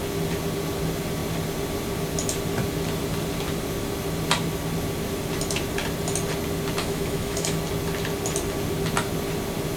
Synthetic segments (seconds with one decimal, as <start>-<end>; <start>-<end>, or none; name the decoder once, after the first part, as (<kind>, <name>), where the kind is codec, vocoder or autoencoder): 6.8-7.6 (autoencoder, DAC-VAE)